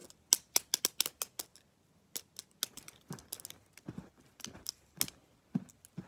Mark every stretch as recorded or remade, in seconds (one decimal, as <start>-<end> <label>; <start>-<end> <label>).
0.0-6.1 recorded